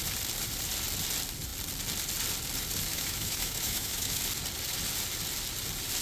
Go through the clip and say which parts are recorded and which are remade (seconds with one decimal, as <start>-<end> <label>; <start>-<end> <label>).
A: 0.0-2.9 recorded; 2.9-4.2 remade; 4.2-6.0 recorded